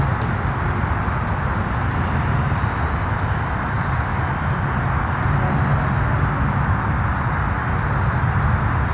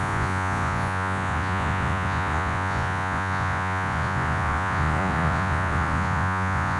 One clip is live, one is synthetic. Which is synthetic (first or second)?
second